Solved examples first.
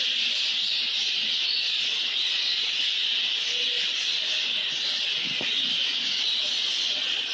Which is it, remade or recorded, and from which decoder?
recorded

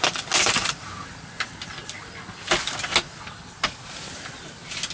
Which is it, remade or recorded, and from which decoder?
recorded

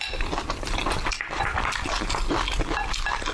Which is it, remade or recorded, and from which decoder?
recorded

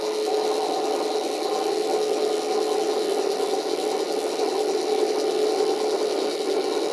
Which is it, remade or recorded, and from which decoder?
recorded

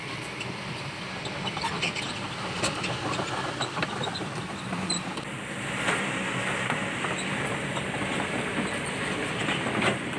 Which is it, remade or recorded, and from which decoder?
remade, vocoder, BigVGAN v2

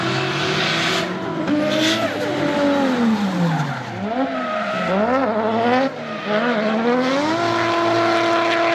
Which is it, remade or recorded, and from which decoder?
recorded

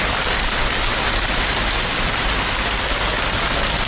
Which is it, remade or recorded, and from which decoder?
recorded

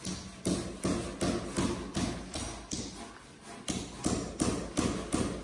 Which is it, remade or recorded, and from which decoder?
recorded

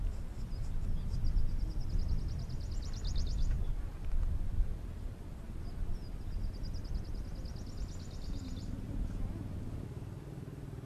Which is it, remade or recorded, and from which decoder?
recorded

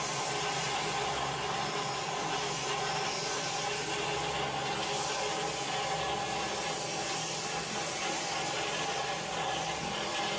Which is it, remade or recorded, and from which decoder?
recorded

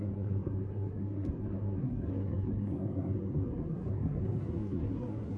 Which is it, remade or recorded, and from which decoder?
remade, codec, SNAC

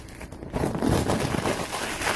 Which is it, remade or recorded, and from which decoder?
recorded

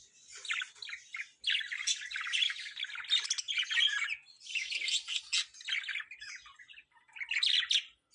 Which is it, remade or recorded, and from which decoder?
recorded